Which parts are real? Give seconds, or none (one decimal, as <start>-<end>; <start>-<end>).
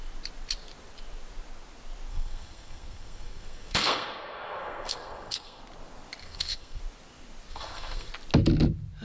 0.0-2.1; 5.6-6.2; 6.8-7.5; 8.1-9.0